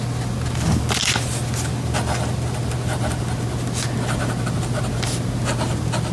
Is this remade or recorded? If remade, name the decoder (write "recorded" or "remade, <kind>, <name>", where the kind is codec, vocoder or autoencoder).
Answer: recorded